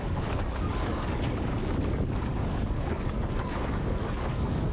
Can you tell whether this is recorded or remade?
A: remade